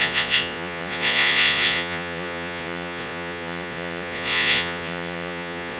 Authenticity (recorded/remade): remade